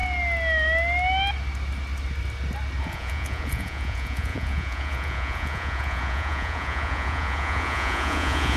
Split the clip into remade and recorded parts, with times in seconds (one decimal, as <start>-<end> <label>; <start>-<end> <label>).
0.0-2.8 recorded; 2.8-8.6 remade